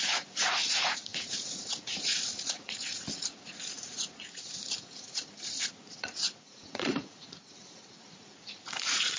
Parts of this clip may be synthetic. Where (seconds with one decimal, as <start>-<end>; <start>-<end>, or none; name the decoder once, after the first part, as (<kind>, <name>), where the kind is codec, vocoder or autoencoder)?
0.0-9.2 (vocoder, Vocos)